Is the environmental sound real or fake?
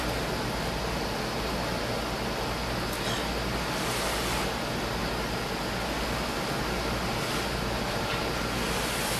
real